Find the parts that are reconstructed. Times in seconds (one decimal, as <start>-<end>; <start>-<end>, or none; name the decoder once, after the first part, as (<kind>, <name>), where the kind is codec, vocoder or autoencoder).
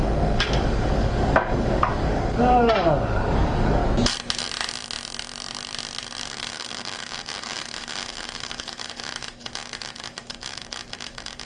0.0-3.8 (codec, DAC); 6.2-11.5